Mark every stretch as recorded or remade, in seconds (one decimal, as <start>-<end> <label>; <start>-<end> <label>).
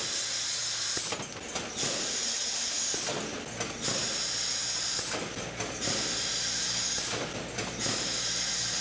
0.0-8.8 recorded